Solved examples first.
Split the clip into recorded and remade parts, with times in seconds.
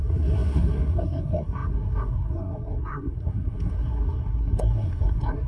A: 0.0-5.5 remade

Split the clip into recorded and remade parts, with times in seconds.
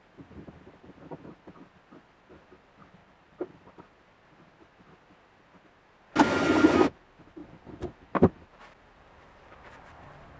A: 0.0-3.0 recorded; 3.0-3.7 remade; 3.7-7.4 recorded; 7.4-10.4 remade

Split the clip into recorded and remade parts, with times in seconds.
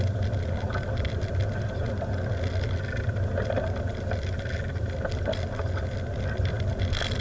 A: 0.0-7.2 recorded